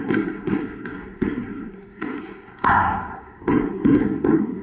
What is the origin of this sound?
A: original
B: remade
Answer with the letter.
B